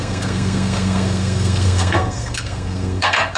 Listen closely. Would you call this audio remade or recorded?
remade